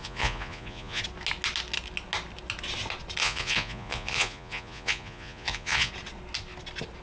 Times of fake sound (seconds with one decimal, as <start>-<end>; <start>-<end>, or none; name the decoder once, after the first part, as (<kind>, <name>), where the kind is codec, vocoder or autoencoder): 0.0-1.0 (vocoder, Vocos); 3.2-5.9